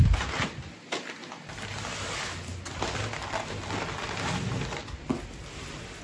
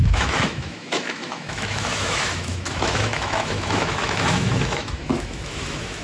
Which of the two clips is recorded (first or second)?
first